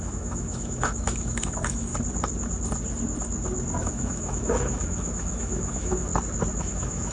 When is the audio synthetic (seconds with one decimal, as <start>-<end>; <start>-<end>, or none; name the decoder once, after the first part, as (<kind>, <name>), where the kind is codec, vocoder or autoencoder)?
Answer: 0.0-1.9 (autoencoder, DAC-VAE); 3.8-6.1; 6.6-7.1